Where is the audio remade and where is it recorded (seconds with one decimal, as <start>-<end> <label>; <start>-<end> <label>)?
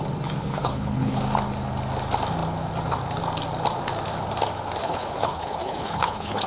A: 0.0-0.4 recorded; 0.4-1.2 remade; 1.2-4.8 recorded; 4.8-6.5 remade